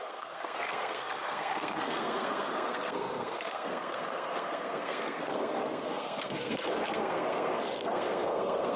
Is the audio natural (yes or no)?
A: no